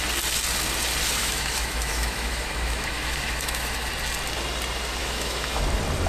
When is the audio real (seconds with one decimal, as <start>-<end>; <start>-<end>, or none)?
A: 0.0-1.2; 3.9-5.0; 5.6-6.1